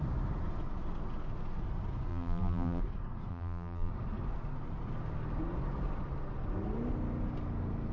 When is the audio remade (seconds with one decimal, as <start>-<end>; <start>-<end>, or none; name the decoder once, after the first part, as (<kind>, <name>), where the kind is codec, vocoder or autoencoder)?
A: 2.1-2.8 (vocoder, BigVGAN v2); 3.3-3.9